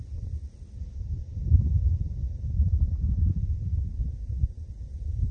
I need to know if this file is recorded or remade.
recorded